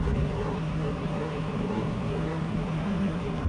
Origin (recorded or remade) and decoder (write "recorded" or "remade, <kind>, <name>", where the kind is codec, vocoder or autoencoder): remade, codec, SNAC